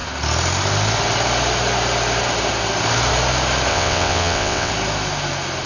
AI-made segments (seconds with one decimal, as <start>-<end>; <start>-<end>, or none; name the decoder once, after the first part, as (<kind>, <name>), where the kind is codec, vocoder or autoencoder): 3.7-4.7 (vocoder, WaveNeXt)